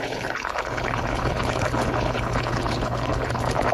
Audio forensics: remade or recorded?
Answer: remade